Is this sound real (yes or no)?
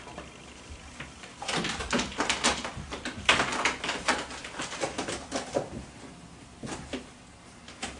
yes